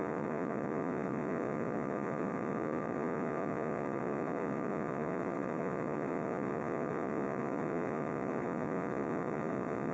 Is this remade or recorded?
remade